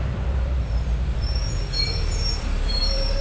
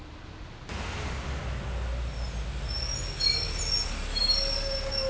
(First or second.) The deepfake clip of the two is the first